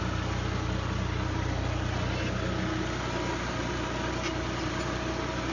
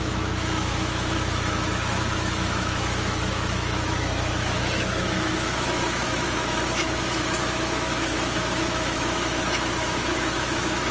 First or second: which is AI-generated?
second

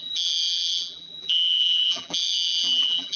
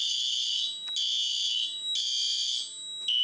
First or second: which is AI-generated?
first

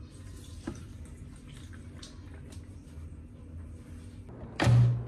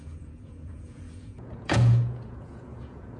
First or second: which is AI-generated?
second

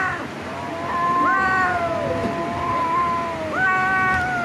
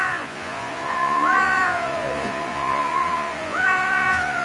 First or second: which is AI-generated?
second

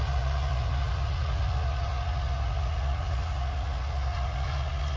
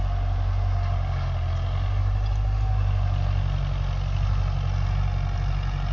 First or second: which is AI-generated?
first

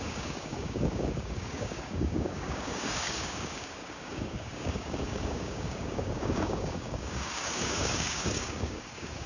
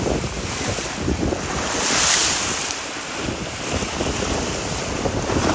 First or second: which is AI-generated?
first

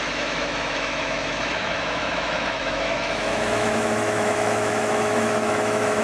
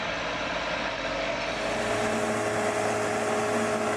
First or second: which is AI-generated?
first